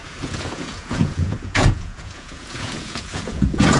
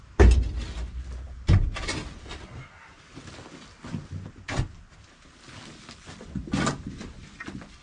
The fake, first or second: first